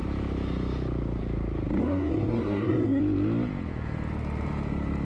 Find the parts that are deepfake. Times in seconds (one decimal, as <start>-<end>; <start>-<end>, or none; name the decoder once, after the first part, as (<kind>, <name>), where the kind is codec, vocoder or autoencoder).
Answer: 1.8-3.0 (codec, SNAC)